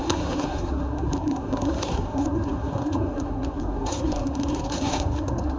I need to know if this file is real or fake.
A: fake